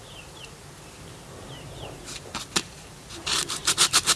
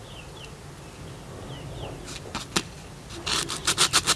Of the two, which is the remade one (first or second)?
first